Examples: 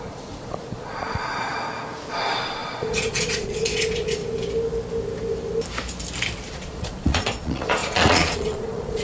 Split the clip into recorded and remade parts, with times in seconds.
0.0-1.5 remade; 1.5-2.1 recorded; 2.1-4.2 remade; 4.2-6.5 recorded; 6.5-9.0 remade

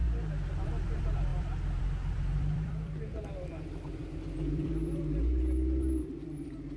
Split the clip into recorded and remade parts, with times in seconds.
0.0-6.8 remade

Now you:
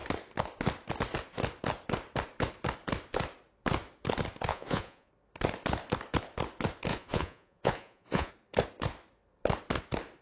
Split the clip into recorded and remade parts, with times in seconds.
0.0-4.5 recorded; 4.5-5.1 remade; 5.1-6.9 recorded; 6.9-8.3 remade; 8.3-10.2 recorded

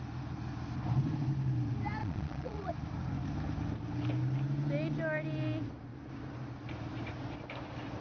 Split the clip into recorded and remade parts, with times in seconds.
0.0-2.0 recorded; 2.0-2.7 remade; 2.7-8.0 recorded